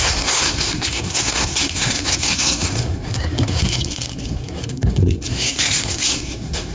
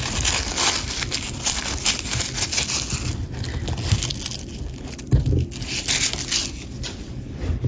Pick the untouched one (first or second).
second